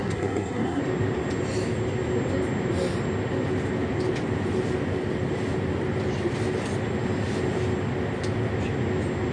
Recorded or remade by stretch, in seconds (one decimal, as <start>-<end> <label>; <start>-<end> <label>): 0.0-0.8 remade; 0.8-9.3 recorded